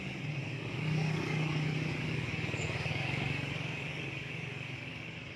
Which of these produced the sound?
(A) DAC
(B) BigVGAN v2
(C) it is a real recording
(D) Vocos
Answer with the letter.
A